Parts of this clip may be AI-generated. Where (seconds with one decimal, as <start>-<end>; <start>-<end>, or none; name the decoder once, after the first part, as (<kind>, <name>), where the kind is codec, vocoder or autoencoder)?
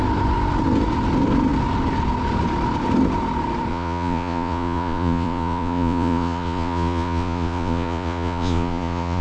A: 3.7-9.2 (vocoder, Vocos)